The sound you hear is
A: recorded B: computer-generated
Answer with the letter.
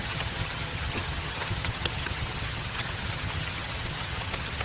B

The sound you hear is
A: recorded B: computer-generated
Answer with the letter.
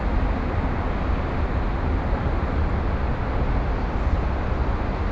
A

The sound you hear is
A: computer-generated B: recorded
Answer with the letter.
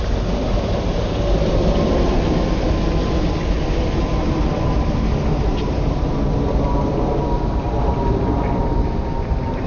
B